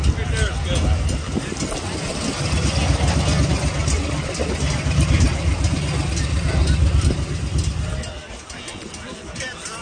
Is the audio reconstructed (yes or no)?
no